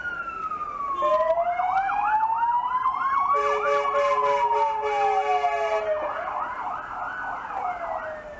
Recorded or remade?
recorded